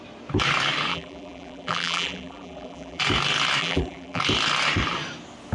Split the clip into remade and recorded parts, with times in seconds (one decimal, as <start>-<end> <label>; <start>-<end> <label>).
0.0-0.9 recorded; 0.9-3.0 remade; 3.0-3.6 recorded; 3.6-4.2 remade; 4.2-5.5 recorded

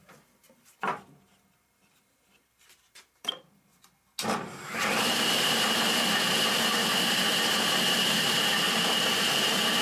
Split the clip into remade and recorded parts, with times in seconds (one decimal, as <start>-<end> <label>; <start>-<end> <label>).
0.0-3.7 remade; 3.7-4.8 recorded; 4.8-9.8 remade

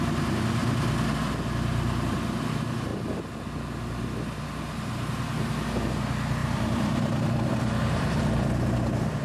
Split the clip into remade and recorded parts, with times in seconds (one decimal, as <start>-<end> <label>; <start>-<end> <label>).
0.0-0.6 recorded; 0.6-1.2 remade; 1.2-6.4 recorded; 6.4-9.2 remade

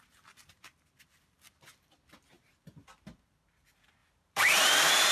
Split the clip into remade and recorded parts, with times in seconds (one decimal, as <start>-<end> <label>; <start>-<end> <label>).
0.0-4.0 recorded; 4.0-4.6 remade; 4.6-5.1 recorded

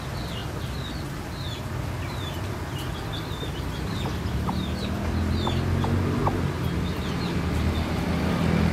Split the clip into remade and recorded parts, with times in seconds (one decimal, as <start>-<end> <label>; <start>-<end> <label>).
0.0-0.4 recorded; 0.4-3.9 remade; 3.9-6.2 recorded; 6.2-7.0 remade; 7.0-8.7 recorded

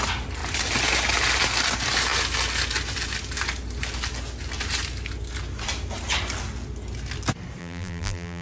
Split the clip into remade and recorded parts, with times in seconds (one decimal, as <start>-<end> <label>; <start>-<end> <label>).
0.0-7.6 recorded; 7.6-8.4 remade

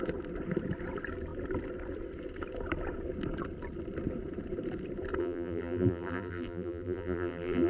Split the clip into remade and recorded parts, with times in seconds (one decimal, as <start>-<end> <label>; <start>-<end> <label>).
0.0-5.2 recorded; 5.2-7.7 remade